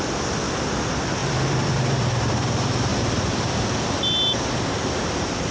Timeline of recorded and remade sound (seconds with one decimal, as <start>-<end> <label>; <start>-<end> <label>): 0.0-1.2 recorded; 1.2-2.3 remade; 2.3-2.9 recorded; 2.9-3.9 remade; 3.9-5.5 recorded